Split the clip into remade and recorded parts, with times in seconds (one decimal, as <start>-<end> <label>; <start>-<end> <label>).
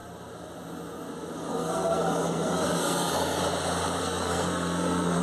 0.0-1.5 recorded; 1.5-3.4 remade; 3.4-4.0 recorded; 4.0-5.2 remade